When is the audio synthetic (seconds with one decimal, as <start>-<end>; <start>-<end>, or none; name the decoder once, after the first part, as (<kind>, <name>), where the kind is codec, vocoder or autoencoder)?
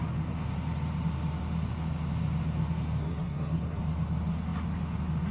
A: 3.0-3.8 (codec, SNAC)